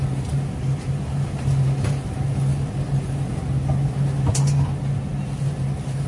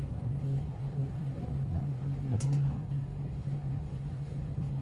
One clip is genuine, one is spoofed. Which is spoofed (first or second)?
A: second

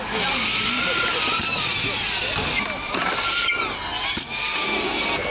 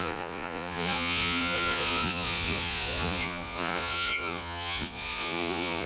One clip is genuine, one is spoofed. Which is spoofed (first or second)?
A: second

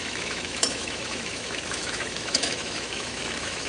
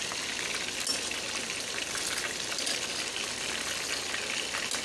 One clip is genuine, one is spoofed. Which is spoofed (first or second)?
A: first